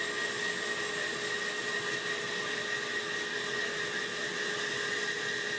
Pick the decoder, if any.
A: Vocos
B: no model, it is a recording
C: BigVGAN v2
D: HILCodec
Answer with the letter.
B